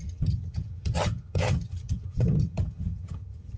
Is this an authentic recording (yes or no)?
no